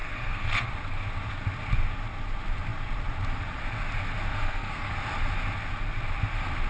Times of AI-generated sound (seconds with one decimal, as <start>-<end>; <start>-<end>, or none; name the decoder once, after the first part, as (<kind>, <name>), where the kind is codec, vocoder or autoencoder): 0.0-0.7 (codec, SNAC); 4.3-4.9